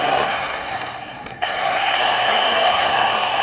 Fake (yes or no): yes